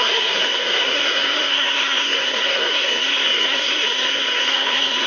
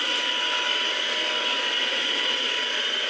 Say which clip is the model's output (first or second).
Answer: first